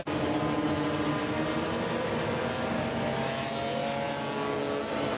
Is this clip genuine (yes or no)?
yes